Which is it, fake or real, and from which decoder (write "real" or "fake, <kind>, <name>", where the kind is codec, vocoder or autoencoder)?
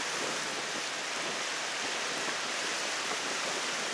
fake, vocoder, BigVGAN v2